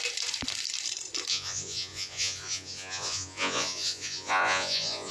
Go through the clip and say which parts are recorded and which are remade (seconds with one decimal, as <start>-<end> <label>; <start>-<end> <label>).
0.0-1.3 recorded; 1.3-5.1 remade